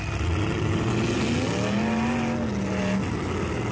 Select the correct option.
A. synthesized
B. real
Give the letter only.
B